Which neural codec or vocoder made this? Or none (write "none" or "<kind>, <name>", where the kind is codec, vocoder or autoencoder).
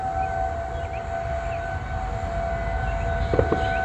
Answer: none